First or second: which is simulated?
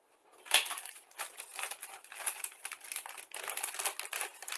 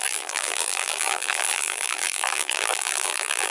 second